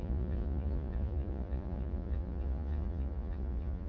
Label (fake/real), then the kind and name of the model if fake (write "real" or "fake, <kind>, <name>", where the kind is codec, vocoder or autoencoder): fake, vocoder, Vocos